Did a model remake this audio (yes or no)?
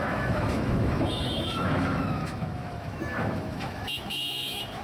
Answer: yes